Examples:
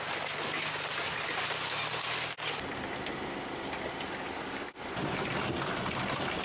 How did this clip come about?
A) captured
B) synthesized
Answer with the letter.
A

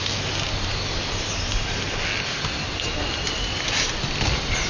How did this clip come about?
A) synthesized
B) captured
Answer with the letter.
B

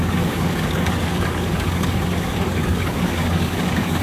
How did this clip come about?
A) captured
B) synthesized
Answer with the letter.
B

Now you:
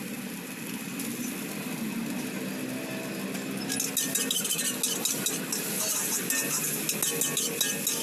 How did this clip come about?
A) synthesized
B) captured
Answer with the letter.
B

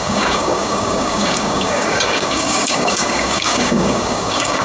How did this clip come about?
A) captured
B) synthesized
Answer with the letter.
B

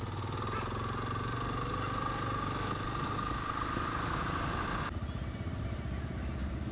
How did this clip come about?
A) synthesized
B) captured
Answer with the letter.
B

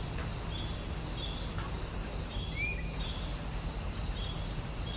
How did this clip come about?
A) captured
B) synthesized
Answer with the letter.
A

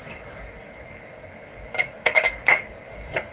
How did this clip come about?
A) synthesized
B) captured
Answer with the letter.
A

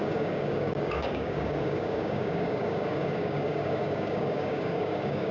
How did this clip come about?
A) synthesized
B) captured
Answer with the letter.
A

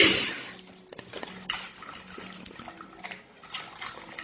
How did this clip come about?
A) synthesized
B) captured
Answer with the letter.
B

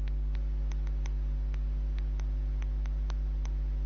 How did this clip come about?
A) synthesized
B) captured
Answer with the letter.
B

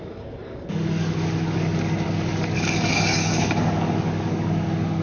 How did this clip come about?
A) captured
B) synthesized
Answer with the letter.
B